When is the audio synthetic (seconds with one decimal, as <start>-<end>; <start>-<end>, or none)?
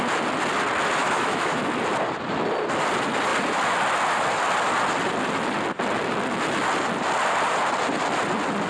1.0-1.6